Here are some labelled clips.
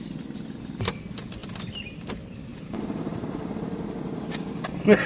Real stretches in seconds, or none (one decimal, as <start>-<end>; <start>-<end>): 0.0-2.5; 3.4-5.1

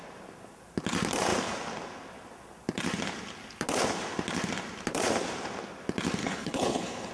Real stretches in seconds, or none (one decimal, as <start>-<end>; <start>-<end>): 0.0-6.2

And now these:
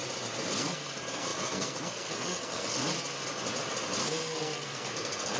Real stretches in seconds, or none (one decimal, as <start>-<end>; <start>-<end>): 0.0-0.5; 2.8-4.0